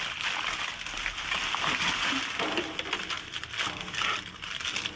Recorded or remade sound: recorded